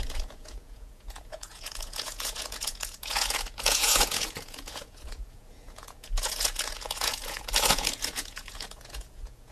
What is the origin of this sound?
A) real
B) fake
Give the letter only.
B